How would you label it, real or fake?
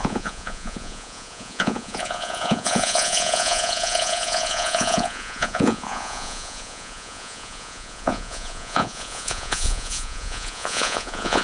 fake